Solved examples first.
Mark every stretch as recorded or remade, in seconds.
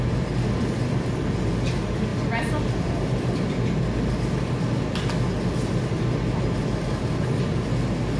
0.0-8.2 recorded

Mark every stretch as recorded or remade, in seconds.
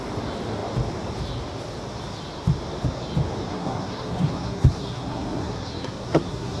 0.0-3.5 recorded; 3.5-6.6 remade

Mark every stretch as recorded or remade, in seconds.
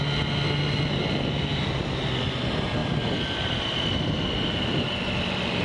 0.0-2.8 recorded; 2.8-4.4 remade; 4.4-5.6 recorded